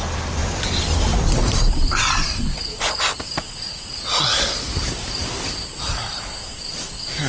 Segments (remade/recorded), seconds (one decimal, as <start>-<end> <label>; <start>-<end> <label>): 0.0-0.4 recorded; 0.4-1.7 remade; 1.7-7.3 recorded